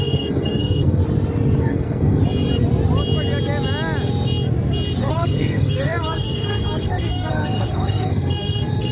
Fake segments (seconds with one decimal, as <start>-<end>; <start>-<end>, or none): 0.0-1.0; 1.6-2.2; 5.0-8.9